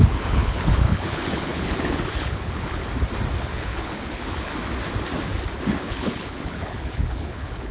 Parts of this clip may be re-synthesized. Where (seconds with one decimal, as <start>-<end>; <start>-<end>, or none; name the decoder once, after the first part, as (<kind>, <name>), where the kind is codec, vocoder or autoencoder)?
0.0-2.8 (codec, HILCodec); 3.4-4.5; 5.8-7.7